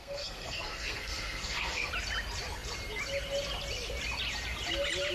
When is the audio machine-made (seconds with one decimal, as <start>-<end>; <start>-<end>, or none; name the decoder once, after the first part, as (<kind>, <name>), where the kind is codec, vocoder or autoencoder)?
0.0-1.9 (codec, SNAC)

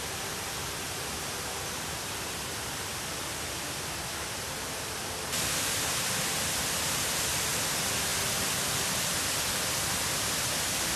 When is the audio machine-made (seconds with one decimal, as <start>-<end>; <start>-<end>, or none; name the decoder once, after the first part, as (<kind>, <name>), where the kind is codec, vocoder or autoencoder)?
none